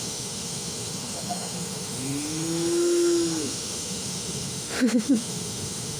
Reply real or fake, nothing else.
fake